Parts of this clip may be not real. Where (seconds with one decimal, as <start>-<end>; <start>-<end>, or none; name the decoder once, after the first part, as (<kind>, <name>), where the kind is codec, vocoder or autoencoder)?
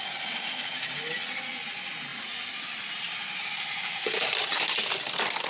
2.1-4.4 (vocoder, BigVGAN v2)